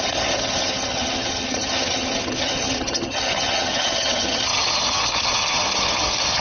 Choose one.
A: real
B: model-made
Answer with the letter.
B